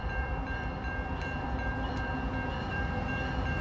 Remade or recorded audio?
remade